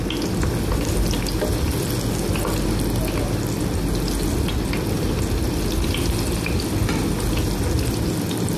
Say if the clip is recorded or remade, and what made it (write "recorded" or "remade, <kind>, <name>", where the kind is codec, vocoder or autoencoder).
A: recorded